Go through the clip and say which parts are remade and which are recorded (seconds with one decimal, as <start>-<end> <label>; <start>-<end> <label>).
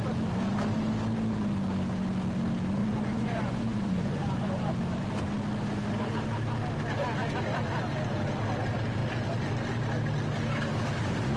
0.0-2.8 recorded; 2.8-4.7 remade; 4.7-11.4 recorded